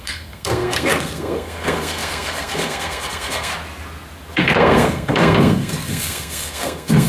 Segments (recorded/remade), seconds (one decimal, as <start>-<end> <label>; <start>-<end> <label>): 0.0-3.5 remade; 3.5-4.3 recorded; 4.3-7.1 remade